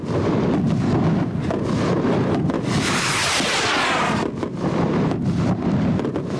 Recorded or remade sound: recorded